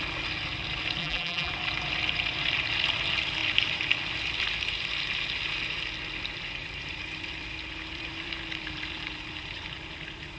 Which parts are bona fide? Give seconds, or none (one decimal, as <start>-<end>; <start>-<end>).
0.0-1.0; 1.5-10.4